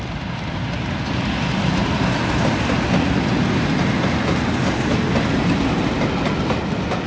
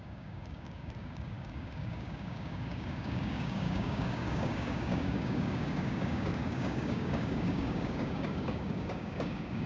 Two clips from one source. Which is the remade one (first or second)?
second